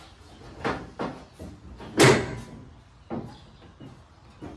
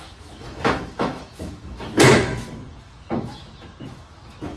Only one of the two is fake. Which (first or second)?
second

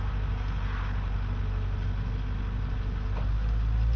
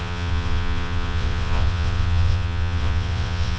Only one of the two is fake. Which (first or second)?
second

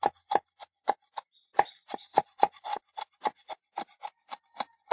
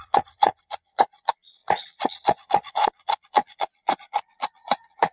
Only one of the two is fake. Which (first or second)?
second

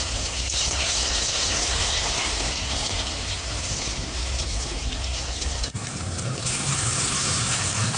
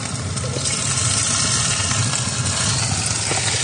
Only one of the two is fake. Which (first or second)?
first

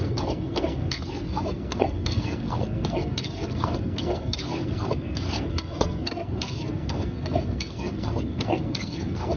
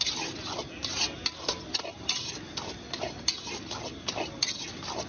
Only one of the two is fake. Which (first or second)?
first